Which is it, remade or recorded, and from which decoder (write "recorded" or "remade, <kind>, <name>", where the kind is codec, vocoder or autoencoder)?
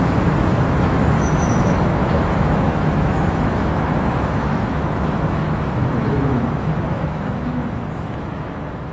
remade, autoencoder, DAC-VAE